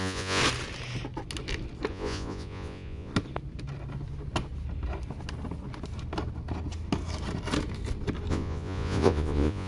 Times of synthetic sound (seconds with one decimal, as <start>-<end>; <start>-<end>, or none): 0.0-0.4; 1.9-3.1; 8.3-9.7